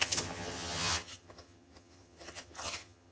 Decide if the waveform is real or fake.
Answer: fake